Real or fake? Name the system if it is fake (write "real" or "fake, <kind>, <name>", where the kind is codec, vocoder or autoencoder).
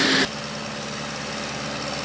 real